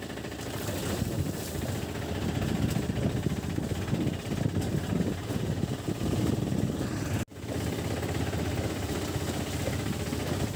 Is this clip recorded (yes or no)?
yes